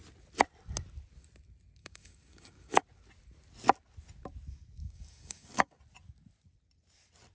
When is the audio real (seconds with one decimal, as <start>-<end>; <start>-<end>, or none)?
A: 0.0-1.8; 2.8-4.8; 5.8-7.3